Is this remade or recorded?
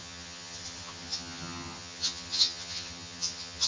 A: remade